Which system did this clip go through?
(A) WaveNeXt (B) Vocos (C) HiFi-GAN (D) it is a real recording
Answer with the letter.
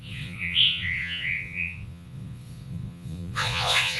B